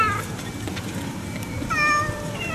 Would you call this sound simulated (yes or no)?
no